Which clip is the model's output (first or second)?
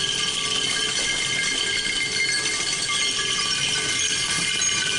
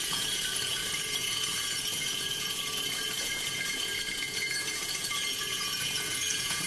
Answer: second